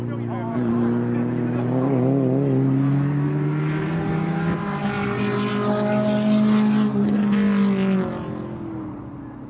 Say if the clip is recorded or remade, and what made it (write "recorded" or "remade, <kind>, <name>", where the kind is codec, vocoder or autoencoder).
recorded